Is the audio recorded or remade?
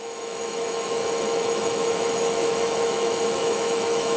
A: remade